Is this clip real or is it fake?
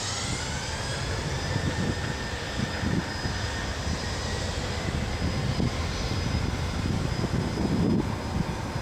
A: real